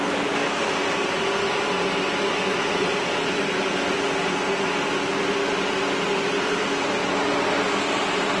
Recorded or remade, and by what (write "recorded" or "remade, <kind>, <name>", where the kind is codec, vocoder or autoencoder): recorded